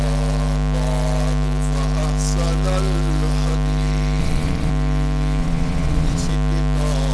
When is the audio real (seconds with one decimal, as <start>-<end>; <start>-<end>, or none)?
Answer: 0.0-4.2; 4.7-5.4; 6.3-7.1